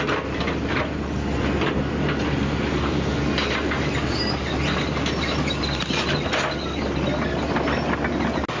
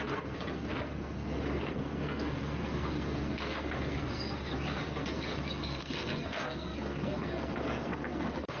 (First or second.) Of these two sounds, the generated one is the second